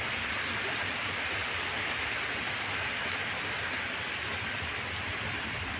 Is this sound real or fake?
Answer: real